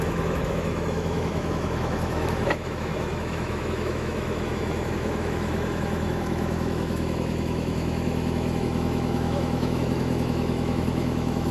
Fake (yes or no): yes